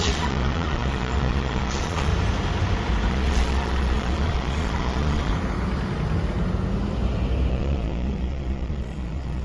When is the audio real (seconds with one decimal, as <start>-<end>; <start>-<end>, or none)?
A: 2.1-3.1; 5.3-7.5